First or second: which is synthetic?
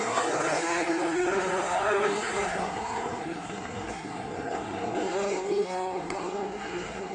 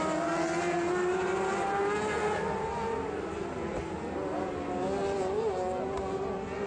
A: first